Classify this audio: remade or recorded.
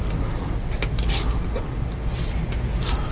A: recorded